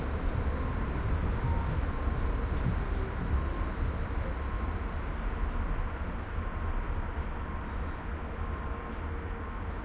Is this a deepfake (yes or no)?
no